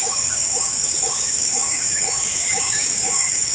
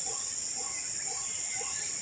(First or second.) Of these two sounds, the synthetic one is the first